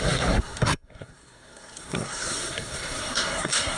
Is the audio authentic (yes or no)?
no